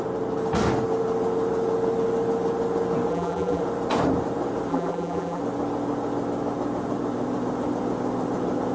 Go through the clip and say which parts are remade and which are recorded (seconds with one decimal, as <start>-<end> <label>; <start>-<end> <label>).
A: 0.0-3.1 recorded; 3.1-3.6 remade; 3.6-4.7 recorded; 4.7-5.4 remade; 5.4-8.7 recorded